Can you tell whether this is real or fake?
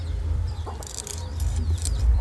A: fake